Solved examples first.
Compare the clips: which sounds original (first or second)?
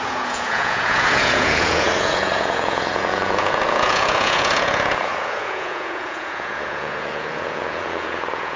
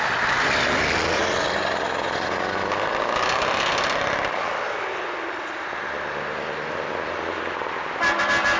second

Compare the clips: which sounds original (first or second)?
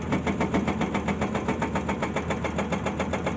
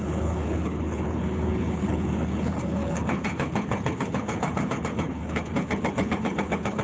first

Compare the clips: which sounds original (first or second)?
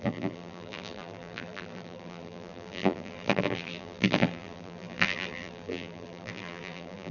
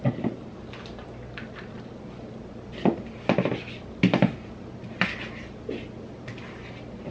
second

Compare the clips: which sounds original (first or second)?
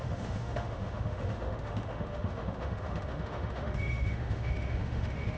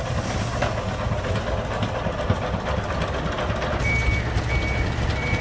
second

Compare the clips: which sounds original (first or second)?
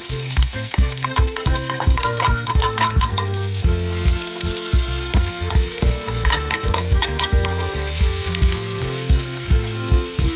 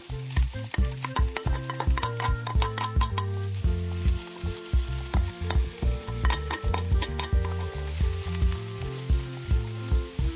second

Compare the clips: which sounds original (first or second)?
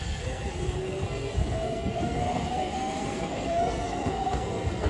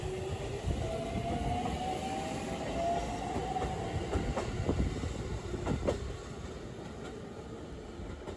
second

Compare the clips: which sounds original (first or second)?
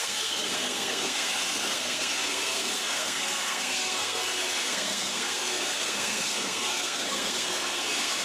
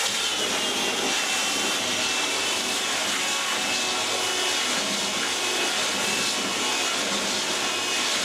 second